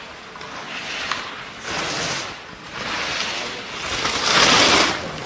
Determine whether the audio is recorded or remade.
recorded